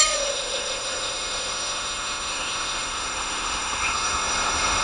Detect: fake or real fake